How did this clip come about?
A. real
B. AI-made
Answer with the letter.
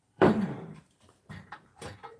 B